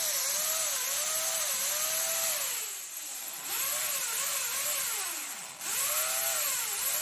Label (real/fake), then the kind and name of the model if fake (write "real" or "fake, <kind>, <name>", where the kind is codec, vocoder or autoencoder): real